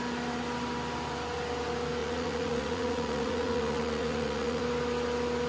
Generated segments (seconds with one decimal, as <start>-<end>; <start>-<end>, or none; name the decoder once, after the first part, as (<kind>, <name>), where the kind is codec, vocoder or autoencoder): 2.0-4.6 (vocoder, Vocos)